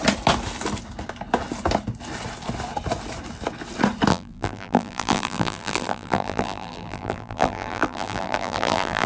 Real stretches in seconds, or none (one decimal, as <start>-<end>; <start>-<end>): 0.0-4.1